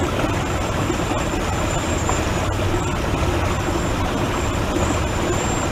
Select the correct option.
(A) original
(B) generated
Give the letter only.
A